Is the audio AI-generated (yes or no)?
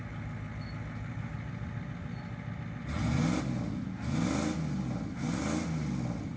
no